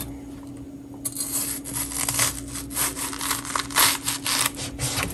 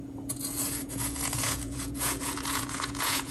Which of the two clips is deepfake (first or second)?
second